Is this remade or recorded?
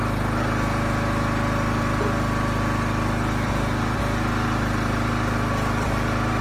recorded